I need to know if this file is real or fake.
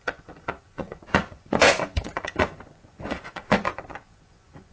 fake